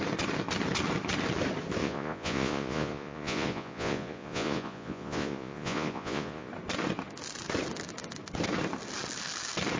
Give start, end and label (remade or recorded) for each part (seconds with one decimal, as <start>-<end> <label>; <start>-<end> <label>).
0.0-1.8 recorded; 1.8-6.5 remade; 6.5-9.8 recorded